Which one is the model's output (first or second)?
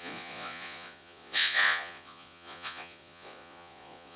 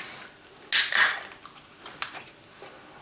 first